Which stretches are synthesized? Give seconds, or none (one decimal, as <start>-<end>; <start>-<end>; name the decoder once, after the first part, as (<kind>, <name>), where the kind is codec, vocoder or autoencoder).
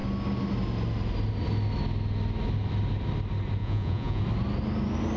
3.6-4.2 (vocoder, Vocos)